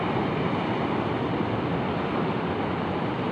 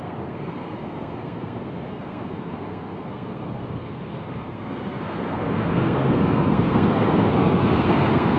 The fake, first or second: second